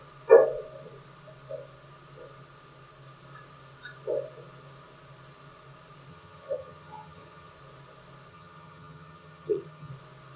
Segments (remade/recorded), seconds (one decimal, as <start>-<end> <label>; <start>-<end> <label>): 0.0-6.1 recorded; 6.1-7.5 remade; 7.5-8.3 recorded; 8.3-9.9 remade; 9.9-10.4 recorded